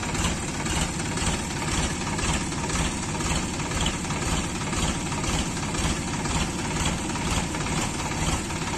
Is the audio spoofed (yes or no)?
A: yes